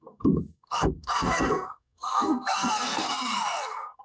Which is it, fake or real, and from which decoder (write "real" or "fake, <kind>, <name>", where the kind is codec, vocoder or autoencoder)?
fake, codec, SNAC